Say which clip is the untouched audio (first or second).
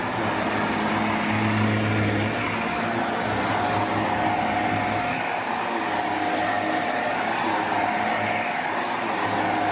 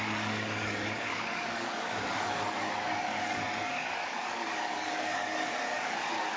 first